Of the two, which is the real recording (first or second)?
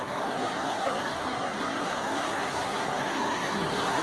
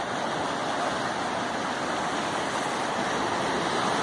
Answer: second